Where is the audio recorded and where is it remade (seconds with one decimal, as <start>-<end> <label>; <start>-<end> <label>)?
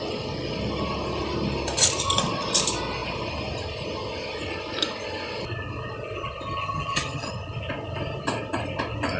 0.0-6.6 recorded; 6.6-7.3 remade; 7.3-9.2 recorded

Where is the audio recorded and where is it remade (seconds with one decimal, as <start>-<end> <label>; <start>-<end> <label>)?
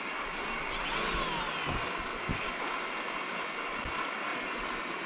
0.0-5.1 recorded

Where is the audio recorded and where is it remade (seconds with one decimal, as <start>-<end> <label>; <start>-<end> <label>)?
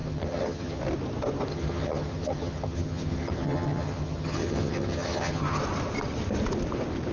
0.0-0.8 remade; 0.8-1.5 recorded; 1.5-5.6 remade; 5.6-7.1 recorded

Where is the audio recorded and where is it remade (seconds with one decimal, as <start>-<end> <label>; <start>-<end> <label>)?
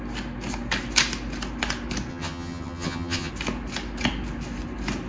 0.0-2.1 recorded; 2.1-3.3 remade; 3.3-5.1 recorded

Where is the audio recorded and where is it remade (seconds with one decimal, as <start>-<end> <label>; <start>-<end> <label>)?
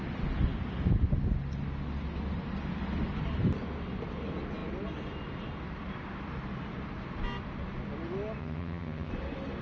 0.0-8.4 recorded; 8.4-9.1 remade; 9.1-9.6 recorded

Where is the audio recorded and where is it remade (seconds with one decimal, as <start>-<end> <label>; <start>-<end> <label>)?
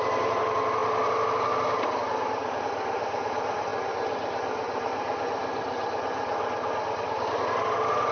0.0-8.1 recorded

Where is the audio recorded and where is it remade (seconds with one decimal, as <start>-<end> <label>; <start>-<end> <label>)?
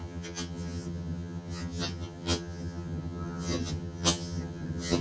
0.0-5.0 remade